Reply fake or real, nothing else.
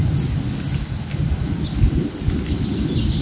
real